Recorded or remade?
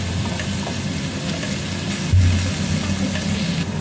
recorded